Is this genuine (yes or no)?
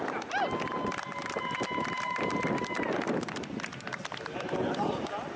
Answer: yes